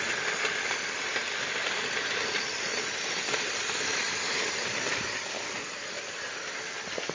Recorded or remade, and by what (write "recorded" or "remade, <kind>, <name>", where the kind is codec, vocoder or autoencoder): recorded